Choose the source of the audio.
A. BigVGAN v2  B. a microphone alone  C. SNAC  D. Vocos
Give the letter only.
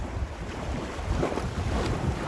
A